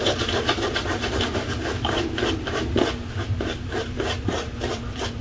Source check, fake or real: fake